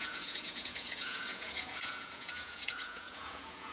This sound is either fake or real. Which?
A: fake